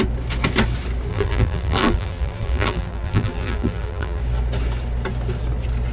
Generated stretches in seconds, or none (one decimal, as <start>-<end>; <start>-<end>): 1.1-4.2